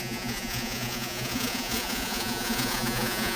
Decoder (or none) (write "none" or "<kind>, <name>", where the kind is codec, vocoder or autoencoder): vocoder, Vocos